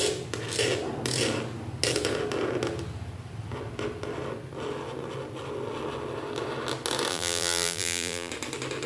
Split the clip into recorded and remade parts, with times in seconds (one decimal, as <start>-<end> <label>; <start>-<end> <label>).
0.0-7.1 recorded; 7.1-8.3 remade; 8.3-8.9 recorded